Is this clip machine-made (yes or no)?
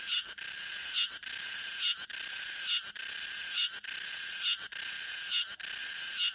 no